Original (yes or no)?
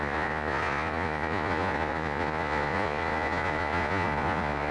no